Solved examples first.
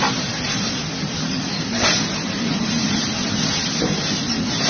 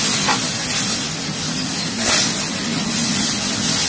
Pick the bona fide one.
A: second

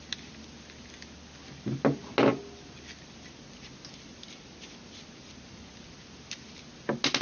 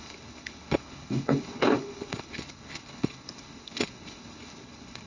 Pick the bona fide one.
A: first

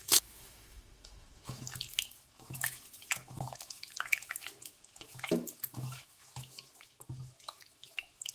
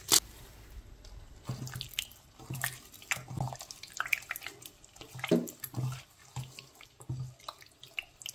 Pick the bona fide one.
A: second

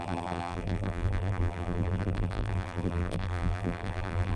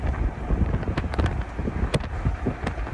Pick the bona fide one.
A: second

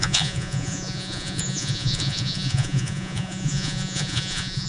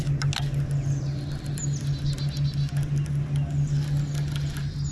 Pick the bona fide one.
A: second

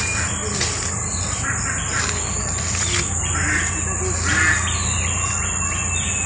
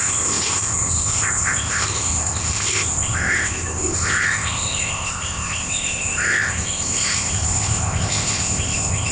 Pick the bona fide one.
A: first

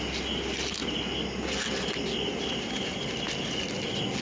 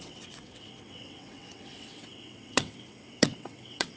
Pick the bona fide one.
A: first